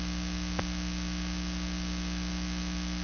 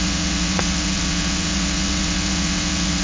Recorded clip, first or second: first